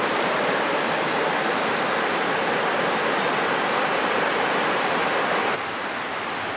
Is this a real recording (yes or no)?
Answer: yes